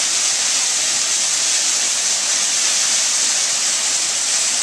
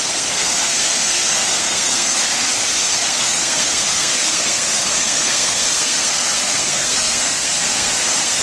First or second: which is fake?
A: second